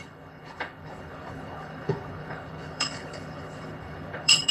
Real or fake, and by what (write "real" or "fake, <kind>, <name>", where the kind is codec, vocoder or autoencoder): fake, codec, HILCodec